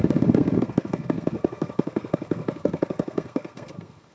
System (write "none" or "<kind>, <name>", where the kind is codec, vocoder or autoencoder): codec, SNAC